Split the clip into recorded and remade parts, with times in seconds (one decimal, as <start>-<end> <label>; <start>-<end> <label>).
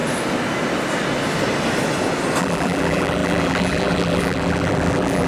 0.0-2.4 recorded; 2.4-5.3 remade